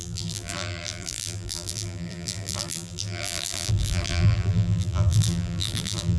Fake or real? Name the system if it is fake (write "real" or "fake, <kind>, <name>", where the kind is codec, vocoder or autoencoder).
fake, vocoder, BigVGAN v2